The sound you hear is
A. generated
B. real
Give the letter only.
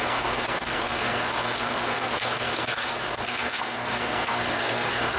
A